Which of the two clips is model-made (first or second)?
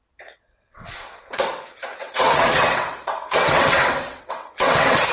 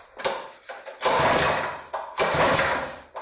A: first